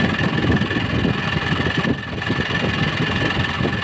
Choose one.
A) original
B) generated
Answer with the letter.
A